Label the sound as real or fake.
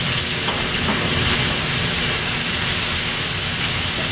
real